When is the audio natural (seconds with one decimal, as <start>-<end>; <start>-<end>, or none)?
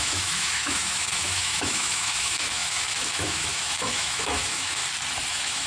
4.8-5.3